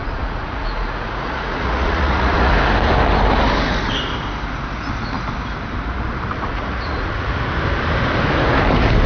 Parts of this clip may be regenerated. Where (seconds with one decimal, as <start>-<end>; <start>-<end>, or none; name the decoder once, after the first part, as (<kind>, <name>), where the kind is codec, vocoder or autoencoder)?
0.0-2.5 (vocoder, Vocos); 6.3-7.4

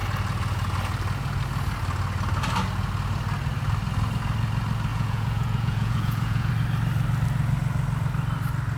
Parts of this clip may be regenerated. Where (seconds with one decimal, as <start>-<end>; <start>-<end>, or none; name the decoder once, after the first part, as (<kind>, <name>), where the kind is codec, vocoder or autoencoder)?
4.9-6.5 (vocoder, Vocos)

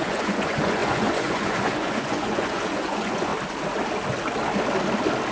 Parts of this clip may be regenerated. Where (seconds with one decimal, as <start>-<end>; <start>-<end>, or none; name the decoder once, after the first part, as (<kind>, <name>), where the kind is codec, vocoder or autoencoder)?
0.0-3.3 (vocoder, Vocos)

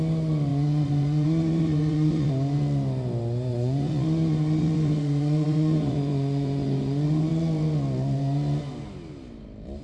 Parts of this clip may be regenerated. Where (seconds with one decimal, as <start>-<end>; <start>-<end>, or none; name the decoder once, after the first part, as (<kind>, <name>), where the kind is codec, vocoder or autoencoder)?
0.5-2.3 (vocoder, Vocos); 3.5-7.3

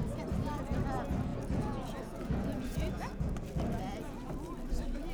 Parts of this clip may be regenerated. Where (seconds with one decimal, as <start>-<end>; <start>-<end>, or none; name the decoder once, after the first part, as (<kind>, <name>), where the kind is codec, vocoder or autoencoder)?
1.3-3.3 (vocoder, Vocos)